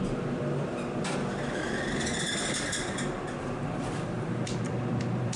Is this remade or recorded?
remade